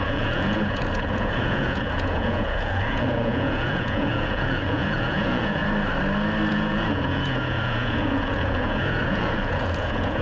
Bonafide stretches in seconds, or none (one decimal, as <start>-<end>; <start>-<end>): 5.6-6.5